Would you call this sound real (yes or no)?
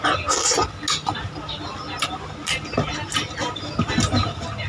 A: yes